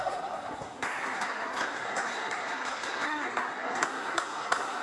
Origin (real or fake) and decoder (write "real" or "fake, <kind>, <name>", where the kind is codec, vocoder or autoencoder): fake, codec, SNAC